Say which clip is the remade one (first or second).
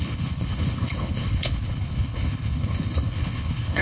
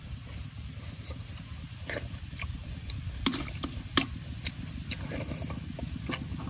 first